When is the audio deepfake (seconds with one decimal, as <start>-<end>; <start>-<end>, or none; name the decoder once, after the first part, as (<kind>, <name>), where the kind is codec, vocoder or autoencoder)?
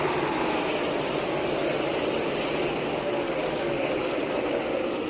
none